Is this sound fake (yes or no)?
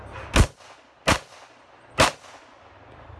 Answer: no